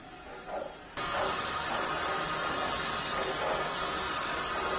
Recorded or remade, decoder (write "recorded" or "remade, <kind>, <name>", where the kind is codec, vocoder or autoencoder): recorded